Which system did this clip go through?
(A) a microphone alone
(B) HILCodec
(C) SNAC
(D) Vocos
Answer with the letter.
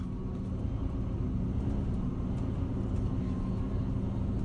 A